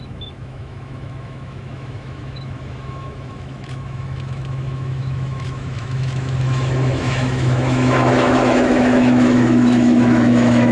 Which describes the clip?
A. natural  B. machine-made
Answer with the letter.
B